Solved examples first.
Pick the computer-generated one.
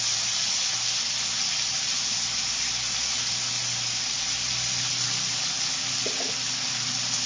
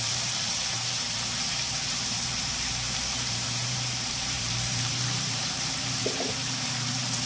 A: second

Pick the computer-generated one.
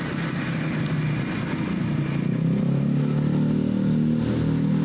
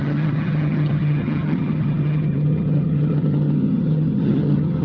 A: second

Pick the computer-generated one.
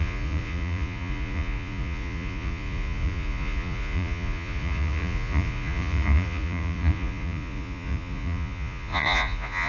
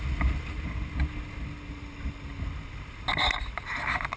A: first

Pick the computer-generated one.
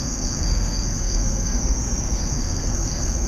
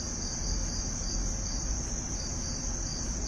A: first